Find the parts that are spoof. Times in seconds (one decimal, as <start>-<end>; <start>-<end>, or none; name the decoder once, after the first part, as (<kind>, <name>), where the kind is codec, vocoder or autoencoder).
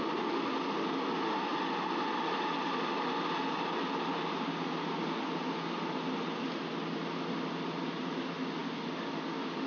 1.5-4.2 (vocoder, BigVGAN v2); 8.6-9.7